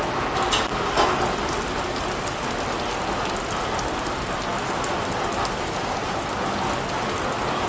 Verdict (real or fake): real